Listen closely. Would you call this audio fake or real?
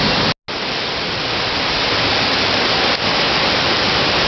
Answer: real